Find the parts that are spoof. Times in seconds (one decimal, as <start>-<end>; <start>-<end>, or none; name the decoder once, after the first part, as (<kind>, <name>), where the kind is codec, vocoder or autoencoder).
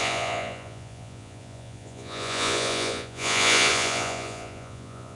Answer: 0.0-5.1 (vocoder, Vocos)